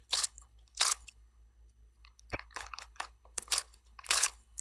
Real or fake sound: fake